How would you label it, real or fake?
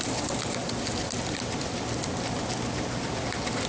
real